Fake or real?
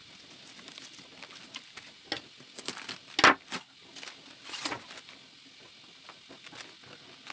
real